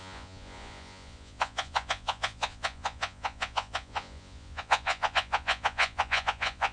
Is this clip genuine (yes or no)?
no